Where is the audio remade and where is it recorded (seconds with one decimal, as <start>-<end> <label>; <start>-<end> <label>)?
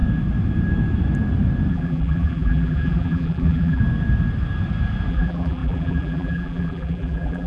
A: 0.0-1.7 recorded; 1.7-3.8 remade; 3.8-5.1 recorded; 5.1-7.5 remade